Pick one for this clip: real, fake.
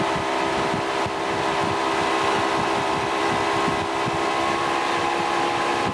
real